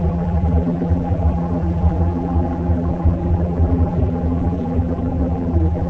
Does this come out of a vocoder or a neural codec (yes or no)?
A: yes